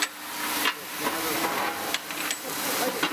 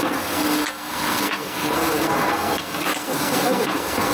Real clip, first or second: first